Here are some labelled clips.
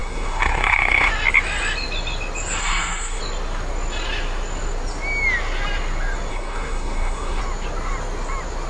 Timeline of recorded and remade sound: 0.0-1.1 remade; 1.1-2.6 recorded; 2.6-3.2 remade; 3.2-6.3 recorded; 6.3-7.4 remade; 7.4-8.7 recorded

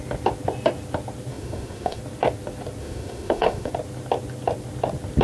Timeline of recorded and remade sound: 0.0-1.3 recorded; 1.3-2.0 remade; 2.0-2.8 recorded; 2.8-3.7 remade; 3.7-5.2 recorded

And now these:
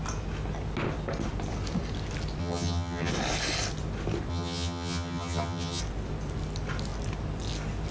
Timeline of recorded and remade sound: 0.0-2.4 recorded; 2.4-3.1 remade; 3.1-4.3 recorded; 4.3-5.8 remade; 5.8-7.9 recorded

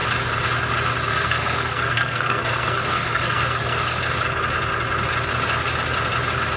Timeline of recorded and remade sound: 0.0-1.1 recorded; 1.1-4.0 remade; 4.0-6.6 recorded

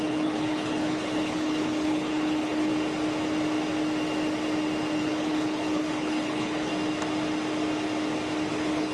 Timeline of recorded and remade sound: 0.0-2.7 remade; 2.7-5.0 recorded; 5.0-6.7 remade; 6.7-8.5 recorded; 8.5-8.9 remade

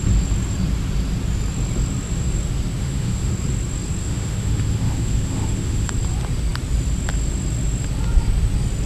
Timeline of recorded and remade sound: 0.0-2.8 recorded; 2.8-3.3 remade; 3.3-4.0 recorded; 4.0-5.9 remade; 5.9-8.9 recorded

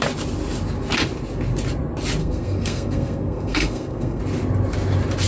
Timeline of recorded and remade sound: 0.0-2.2 recorded; 2.2-4.2 remade; 4.2-5.3 recorded